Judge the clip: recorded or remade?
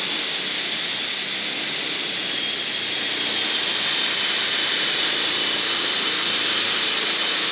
recorded